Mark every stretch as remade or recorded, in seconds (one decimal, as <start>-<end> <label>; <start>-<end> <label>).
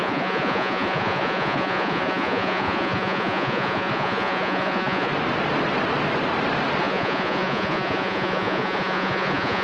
0.0-5.1 remade; 5.1-6.8 recorded; 6.8-9.6 remade